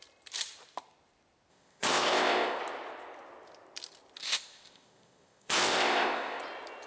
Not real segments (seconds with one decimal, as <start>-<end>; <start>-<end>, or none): 1.5-2.6; 4.2-6.4